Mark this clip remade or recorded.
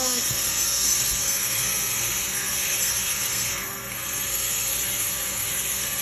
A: remade